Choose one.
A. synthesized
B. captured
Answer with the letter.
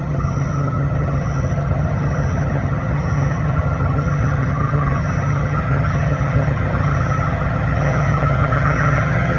A